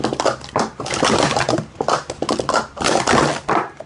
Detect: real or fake real